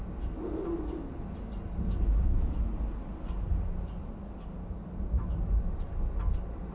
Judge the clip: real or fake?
real